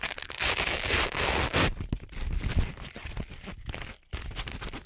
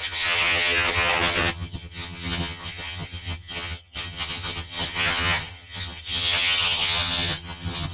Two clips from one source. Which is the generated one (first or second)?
second